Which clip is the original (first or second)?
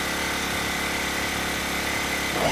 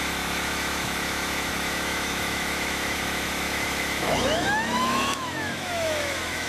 first